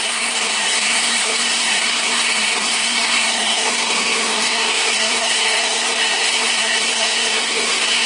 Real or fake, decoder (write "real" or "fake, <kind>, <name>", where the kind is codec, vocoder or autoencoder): fake, codec, SNAC